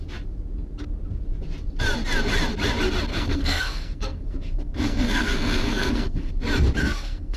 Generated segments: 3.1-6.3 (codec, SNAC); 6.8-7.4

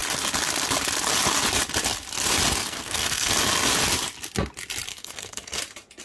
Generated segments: 2.6-3.4 (codec, SNAC); 4.9-5.6

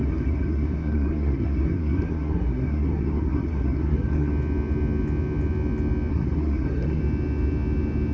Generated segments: 0.0-4.3 (codec, SNAC); 6.1-7.0

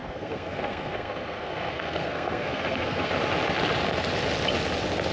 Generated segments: 0.0-3.1 (codec, SNAC)

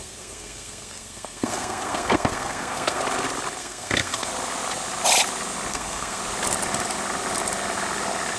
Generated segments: 0.0-3.0 (codec, SNAC); 3.6-4.3; 5.7-6.2